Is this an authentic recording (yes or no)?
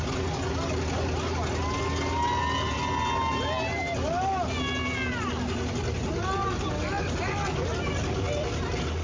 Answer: yes